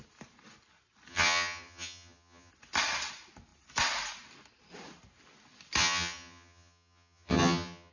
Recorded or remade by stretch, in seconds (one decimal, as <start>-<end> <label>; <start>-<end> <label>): 0.0-1.1 recorded; 1.1-2.5 remade; 2.5-5.8 recorded; 5.8-7.9 remade